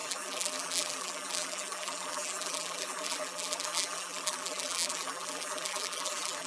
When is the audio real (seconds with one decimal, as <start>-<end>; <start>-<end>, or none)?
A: none